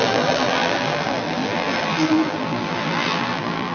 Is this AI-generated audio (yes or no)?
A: yes